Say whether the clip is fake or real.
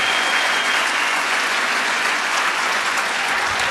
fake